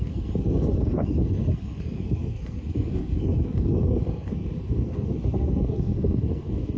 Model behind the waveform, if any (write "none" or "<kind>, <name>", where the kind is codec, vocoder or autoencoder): codec, SNAC